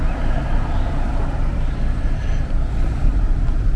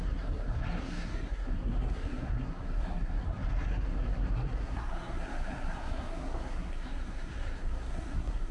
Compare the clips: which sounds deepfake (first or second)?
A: second